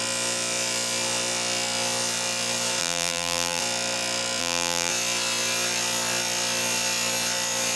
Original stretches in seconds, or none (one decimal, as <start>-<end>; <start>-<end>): 0.0-2.8; 3.6-4.4; 4.9-7.8

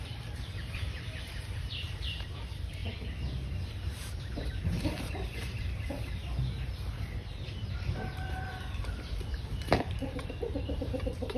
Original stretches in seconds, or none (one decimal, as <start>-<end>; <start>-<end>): 2.8-3.7; 6.2-8.8

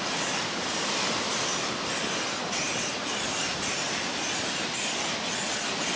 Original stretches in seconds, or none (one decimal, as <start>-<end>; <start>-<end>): 0.0-0.4; 1.1-2.9; 4.0-6.0

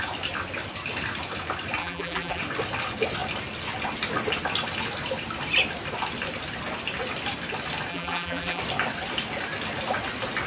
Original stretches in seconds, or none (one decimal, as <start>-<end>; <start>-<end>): 0.0-1.8; 2.4-7.9; 8.6-10.5

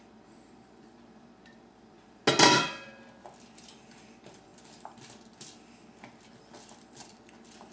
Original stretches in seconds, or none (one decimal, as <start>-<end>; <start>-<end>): 2.2-3.6; 4.5-6.0

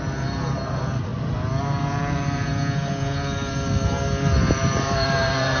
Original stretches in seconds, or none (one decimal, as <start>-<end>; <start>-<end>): 1.1-1.6; 2.5-4.5

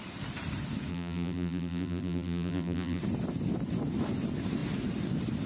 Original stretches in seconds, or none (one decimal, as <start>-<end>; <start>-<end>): 0.0-0.9; 3.0-5.5

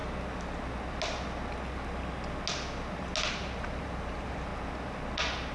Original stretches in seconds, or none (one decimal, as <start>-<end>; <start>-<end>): 0.0-3.3; 4.5-5.5